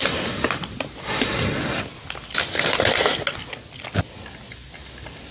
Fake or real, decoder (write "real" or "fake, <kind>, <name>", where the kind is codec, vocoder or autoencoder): real